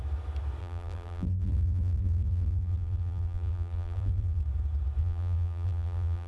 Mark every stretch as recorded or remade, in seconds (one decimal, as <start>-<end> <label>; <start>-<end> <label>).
0.0-0.6 recorded; 0.6-4.4 remade; 4.4-5.0 recorded; 5.0-6.3 remade